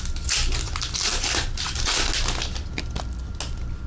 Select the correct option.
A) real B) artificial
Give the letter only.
A